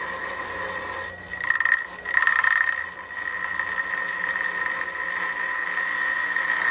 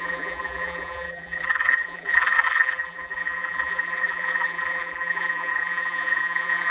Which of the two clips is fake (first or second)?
second